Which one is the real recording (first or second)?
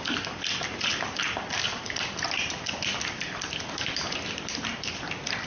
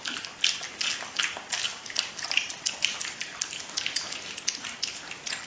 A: second